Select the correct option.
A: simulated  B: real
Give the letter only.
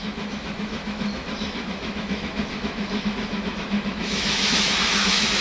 A